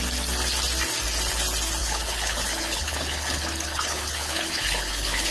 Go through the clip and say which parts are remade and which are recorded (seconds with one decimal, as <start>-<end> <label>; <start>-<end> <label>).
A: 0.0-1.8 recorded; 1.8-5.3 remade